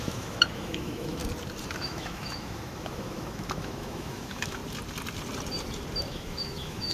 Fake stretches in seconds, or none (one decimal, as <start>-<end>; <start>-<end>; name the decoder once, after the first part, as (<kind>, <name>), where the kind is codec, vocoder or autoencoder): 0.0-1.2 (autoencoder, DAC-VAE); 1.8-4.6; 6.0-6.9

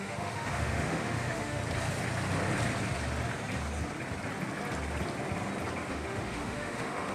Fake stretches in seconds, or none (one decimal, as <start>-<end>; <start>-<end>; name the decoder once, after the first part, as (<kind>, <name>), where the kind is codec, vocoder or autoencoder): 0.0-1.6 (autoencoder, DAC-VAE); 5.9-7.1

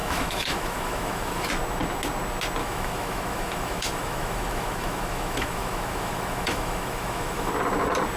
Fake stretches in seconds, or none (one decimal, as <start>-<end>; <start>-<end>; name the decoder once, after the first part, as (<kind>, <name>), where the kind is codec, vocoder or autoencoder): 0.0-1.5 (autoencoder, DAC-VAE); 2.6-7.5

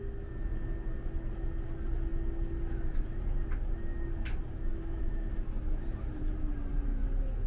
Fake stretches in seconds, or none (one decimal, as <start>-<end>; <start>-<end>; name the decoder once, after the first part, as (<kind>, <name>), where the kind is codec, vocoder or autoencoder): 4.7-5.8 (autoencoder, DAC-VAE)

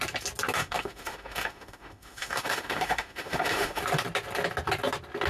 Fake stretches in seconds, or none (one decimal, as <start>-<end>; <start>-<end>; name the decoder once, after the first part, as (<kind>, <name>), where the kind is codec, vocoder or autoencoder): 0.6-3.8 (autoencoder, DAC-VAE)